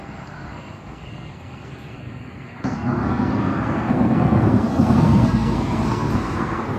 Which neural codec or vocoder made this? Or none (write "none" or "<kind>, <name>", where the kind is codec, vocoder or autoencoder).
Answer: codec, SNAC